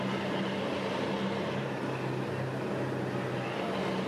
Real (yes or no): yes